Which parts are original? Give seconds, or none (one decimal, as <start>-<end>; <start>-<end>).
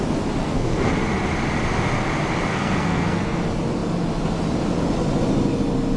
0.0-0.4; 0.9-2.5; 3.4-6.0